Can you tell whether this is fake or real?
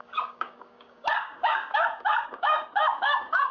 fake